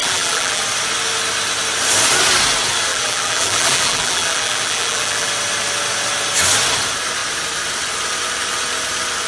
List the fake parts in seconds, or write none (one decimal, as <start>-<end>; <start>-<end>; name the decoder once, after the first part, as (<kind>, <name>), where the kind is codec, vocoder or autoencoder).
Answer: 0.0-0.6 (vocoder, BigVGAN v2); 2.9-5.3